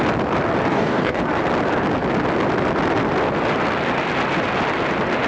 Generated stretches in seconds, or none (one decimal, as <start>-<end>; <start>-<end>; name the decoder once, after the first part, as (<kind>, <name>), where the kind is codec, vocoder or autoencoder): 0.7-1.2 (codec, DAC)

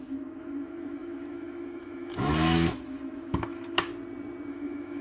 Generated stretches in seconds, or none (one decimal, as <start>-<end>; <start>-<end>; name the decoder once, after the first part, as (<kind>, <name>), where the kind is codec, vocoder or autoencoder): 0.0-3.9 (autoencoder, DAC-VAE); 4.5-5.0